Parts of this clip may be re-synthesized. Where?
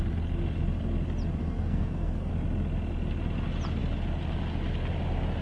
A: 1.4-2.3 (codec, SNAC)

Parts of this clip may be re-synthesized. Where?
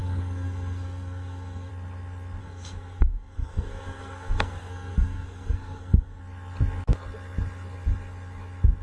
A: 0.0-1.7 (codec, SNAC); 2.4-6.2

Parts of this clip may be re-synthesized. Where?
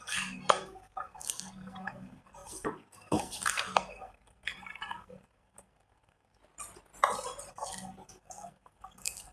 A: 0.0-6.4 (codec, SNAC); 7.5-9.3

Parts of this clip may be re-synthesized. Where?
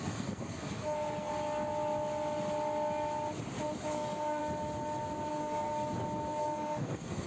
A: 0.0-1.3 (codec, SNAC); 3.9-4.4; 5.3-5.7; 6.4-7.3